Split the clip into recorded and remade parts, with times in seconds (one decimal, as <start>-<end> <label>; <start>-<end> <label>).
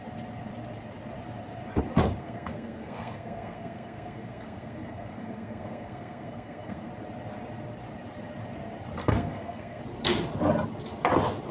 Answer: 0.0-2.2 recorded; 2.2-6.9 remade; 6.9-9.0 recorded; 9.0-9.8 remade; 9.8-11.5 recorded